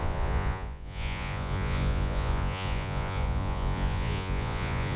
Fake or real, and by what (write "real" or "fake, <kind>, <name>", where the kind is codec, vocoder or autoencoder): fake, vocoder, Vocos